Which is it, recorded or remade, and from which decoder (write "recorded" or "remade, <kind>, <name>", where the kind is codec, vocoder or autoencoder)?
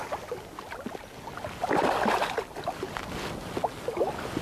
recorded